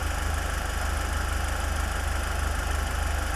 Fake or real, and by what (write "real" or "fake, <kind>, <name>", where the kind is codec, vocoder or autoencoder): real